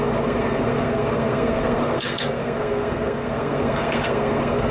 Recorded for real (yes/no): no